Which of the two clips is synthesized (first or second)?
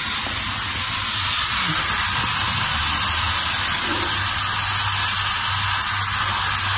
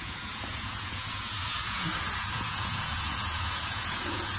second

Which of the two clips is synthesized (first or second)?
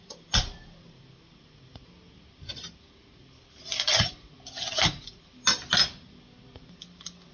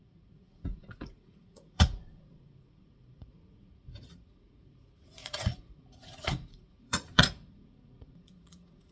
second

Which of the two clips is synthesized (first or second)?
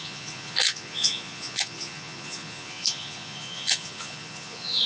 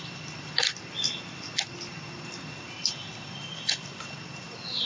first